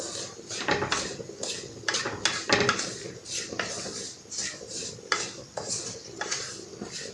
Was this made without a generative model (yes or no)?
yes